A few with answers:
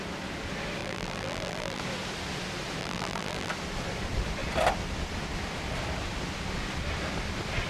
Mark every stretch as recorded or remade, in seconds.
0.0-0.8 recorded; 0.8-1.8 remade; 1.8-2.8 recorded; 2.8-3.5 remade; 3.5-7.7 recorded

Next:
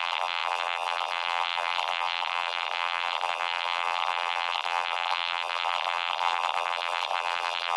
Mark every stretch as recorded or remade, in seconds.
0.0-7.8 remade